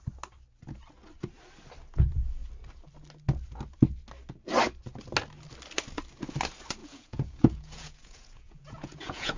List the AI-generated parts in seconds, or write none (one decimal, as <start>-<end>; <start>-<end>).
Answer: 6.8-9.4